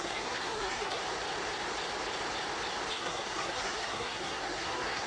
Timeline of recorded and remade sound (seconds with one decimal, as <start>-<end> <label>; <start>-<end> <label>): 0.0-1.0 remade; 1.0-2.9 recorded; 2.9-5.1 remade